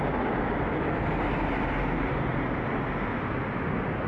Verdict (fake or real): real